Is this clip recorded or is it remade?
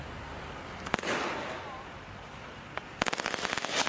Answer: recorded